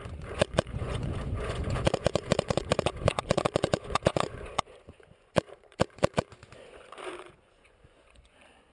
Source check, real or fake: fake